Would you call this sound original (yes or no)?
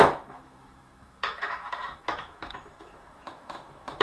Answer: no